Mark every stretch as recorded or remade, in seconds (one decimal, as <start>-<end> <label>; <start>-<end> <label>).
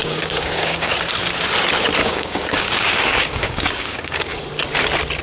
0.0-0.9 remade; 0.9-2.0 recorded; 2.0-4.4 remade; 4.4-5.2 recorded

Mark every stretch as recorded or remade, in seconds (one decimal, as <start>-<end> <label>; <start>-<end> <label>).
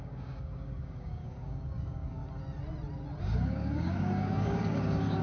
0.0-2.2 remade; 2.2-3.2 recorded; 3.2-5.2 remade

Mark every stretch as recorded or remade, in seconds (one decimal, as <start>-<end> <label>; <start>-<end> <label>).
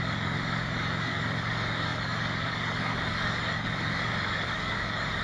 0.0-5.2 remade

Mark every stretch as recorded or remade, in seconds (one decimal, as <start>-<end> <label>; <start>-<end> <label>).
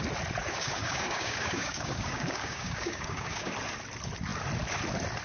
0.0-0.4 recorded; 0.4-3.5 remade; 3.5-5.2 recorded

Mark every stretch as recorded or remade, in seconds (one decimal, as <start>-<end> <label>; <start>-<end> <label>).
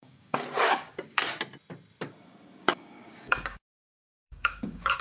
0.0-1.2 remade; 1.2-2.6 recorded; 2.6-5.0 remade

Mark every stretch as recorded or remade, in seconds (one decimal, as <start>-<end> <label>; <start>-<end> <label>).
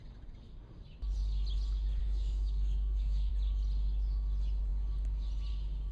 0.0-2.0 recorded; 2.0-3.3 remade; 3.3-5.9 recorded